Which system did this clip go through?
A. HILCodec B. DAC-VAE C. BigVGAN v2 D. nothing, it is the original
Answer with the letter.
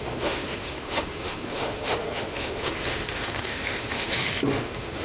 B